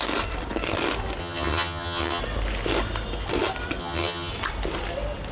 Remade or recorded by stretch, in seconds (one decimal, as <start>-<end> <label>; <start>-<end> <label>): 0.0-1.2 recorded; 1.2-2.2 remade; 2.2-3.8 recorded; 3.8-4.3 remade; 4.3-5.3 recorded